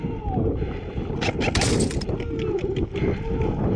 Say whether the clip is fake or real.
real